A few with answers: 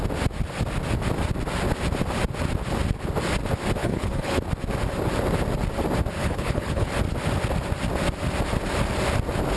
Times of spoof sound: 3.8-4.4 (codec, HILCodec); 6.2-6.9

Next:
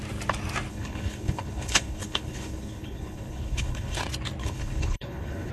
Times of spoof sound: 0.7-4.0 (codec, HILCodec); 4.4-5.5